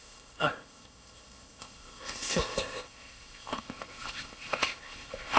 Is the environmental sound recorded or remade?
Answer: remade